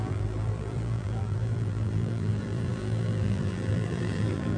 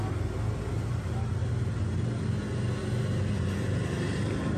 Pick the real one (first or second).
second